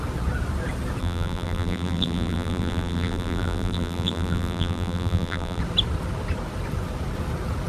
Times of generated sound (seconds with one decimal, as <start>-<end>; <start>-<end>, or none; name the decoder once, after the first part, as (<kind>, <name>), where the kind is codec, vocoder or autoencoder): 1.0-5.6 (vocoder, BigVGAN v2)